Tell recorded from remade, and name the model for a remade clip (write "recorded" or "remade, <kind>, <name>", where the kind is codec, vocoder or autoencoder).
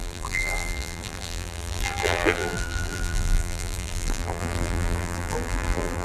remade, vocoder, BigVGAN v2